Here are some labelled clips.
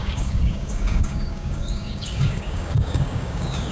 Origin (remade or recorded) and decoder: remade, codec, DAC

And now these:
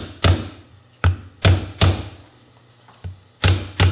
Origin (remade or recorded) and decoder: recorded